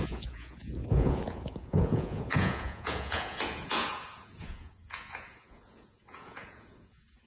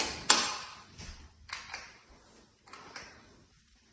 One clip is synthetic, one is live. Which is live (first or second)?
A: second